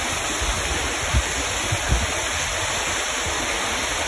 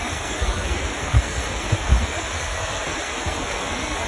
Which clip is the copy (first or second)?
second